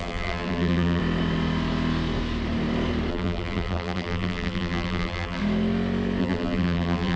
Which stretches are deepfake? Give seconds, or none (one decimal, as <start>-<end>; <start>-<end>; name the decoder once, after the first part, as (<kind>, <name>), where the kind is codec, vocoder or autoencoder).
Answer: 0.0-1.0 (vocoder, BigVGAN v2); 3.1-5.4; 6.2-7.2